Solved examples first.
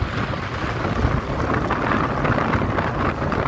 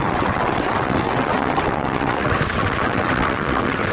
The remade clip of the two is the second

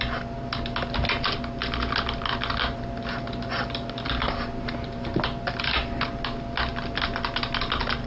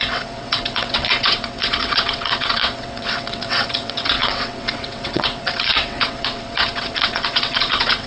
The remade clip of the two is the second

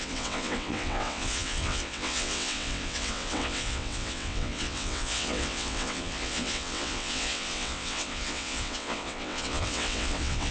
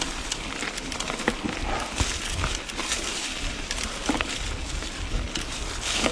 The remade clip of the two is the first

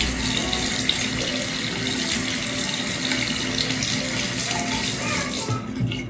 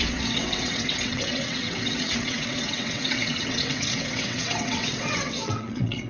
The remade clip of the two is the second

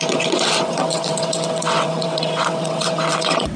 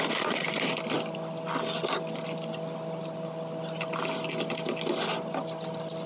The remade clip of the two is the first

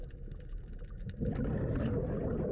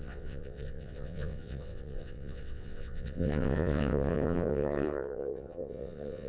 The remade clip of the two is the second